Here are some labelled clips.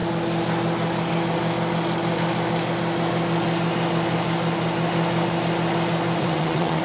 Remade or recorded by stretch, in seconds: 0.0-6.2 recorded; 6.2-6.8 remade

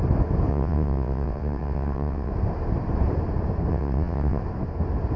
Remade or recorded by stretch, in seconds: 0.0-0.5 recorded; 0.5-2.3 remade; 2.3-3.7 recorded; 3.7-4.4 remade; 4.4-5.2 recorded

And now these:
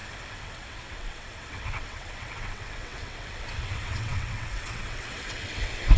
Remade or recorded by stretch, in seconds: 0.0-6.0 remade

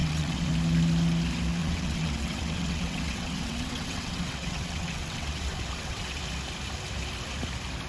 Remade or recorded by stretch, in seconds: 0.0-0.5 remade; 0.5-1.6 recorded; 1.6-6.2 remade; 6.2-7.9 recorded